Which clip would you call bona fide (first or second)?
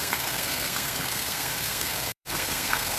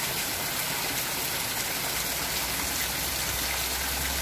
second